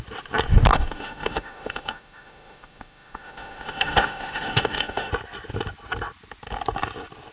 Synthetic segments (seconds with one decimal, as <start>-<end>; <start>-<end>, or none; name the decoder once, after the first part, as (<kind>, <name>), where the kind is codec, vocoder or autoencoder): 0.7-5.1 (autoencoder, DAC-VAE)